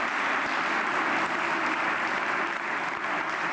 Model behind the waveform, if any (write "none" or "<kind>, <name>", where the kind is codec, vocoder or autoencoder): vocoder, BigVGAN v2